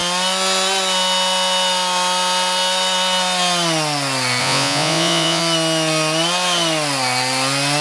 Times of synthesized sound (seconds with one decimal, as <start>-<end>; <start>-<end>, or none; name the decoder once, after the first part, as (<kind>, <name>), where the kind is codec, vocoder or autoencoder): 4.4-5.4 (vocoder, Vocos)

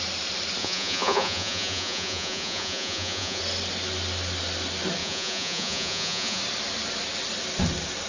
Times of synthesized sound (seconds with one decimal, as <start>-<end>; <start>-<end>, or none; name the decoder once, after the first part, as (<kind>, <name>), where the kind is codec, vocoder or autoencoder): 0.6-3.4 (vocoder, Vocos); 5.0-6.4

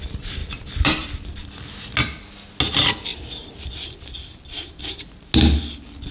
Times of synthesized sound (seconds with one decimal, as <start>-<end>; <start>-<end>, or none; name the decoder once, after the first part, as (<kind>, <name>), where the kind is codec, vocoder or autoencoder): none

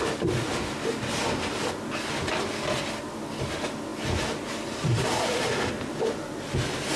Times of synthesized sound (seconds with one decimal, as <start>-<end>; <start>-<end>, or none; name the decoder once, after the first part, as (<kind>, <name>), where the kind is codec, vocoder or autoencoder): none

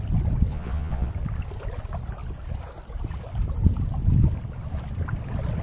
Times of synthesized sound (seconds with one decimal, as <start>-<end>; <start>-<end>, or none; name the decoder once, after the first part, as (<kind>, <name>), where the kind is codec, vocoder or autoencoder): 0.5-1.1 (vocoder, Vocos)

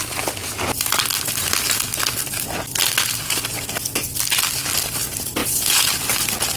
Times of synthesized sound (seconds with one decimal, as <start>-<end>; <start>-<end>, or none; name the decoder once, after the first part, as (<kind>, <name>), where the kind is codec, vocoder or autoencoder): 5.4-5.9 (vocoder, Vocos)

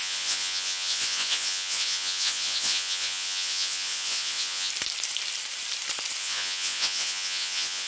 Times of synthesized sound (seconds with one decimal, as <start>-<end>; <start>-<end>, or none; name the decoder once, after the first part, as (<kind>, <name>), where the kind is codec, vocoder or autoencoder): 0.0-4.7 (vocoder, Vocos); 6.2-7.9